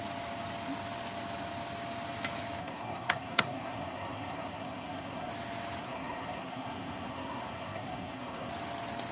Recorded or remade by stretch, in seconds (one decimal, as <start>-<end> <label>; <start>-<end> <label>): 0.0-2.6 recorded; 2.6-5.3 remade; 5.3-5.8 recorded; 5.8-8.5 remade; 8.5-9.1 recorded